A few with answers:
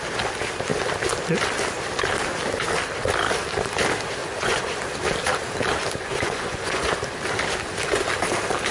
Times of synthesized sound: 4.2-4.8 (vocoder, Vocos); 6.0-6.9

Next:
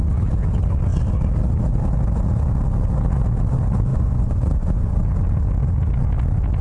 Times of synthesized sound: 3.9-5.0 (vocoder, Vocos)